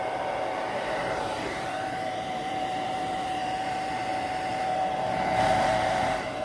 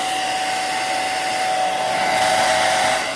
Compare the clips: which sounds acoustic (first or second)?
second